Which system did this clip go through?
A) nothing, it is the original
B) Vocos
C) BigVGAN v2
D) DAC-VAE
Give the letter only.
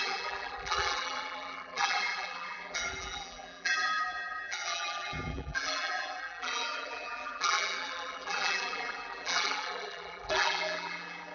C